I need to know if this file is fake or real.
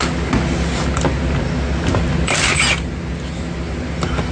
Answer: real